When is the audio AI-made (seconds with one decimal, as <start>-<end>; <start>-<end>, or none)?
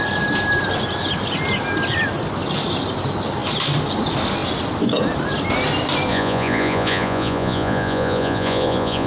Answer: 6.1-9.1